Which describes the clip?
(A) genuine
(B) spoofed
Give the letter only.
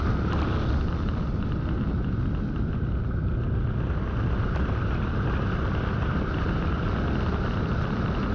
A